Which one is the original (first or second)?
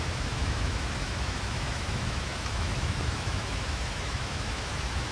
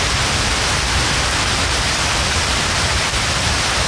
second